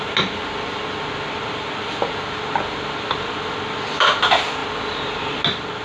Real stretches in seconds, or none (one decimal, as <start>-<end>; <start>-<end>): 0.0-5.8